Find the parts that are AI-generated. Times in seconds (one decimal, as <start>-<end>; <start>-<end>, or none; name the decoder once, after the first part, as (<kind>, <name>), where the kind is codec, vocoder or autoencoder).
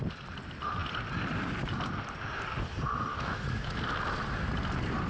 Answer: 3.1-3.7 (autoencoder, DAC-VAE)